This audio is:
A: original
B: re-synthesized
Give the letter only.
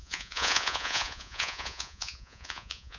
B